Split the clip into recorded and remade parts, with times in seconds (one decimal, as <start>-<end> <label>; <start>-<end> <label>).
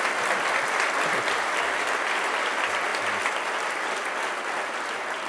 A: 0.0-5.3 recorded